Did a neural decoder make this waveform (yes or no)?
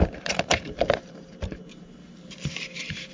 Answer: yes